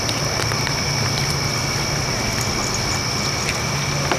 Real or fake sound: real